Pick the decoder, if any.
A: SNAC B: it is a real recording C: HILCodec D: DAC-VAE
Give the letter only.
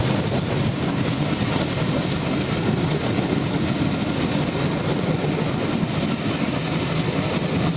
B